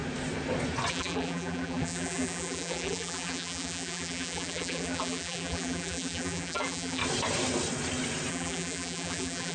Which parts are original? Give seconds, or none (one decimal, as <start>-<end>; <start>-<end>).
0.0-0.9; 7.0-8.3